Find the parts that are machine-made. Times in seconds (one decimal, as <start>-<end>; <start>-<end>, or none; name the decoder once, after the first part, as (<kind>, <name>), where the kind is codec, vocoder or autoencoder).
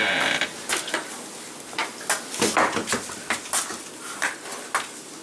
none